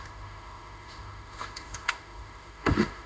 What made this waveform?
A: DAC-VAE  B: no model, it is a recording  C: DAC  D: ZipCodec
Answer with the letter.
A